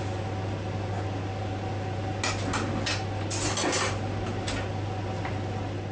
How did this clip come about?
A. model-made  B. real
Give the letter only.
B